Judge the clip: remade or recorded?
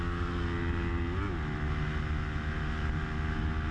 recorded